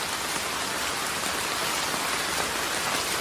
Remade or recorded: recorded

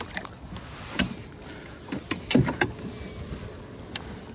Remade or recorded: recorded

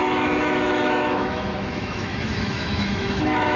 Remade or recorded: remade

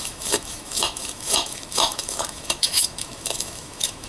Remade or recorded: remade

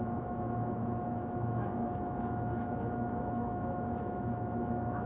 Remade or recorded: remade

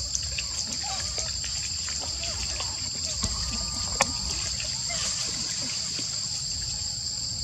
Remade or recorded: recorded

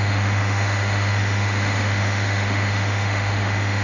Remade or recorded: remade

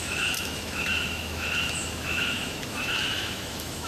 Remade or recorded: remade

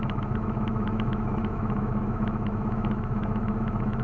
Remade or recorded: remade